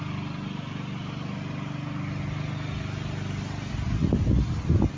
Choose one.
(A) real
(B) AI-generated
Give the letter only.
A